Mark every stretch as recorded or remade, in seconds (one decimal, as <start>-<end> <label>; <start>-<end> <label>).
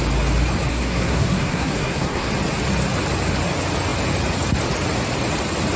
0.0-0.7 recorded; 0.7-2.3 remade; 2.3-5.8 recorded